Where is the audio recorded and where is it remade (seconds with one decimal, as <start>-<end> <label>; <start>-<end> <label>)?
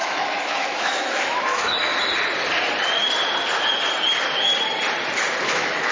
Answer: 0.0-1.9 remade; 1.9-5.4 recorded; 5.4-5.9 remade